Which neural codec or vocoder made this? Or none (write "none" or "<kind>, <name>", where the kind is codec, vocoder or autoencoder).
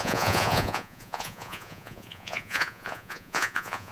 vocoder, Vocos